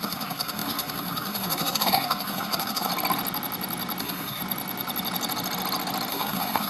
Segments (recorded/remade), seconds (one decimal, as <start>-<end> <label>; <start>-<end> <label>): 0.0-2.9 remade; 2.9-4.0 recorded; 4.0-4.4 remade; 4.4-6.1 recorded; 6.1-6.7 remade